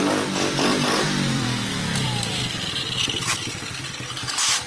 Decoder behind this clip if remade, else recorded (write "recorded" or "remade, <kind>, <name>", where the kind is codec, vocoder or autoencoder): remade, vocoder, BigVGAN v2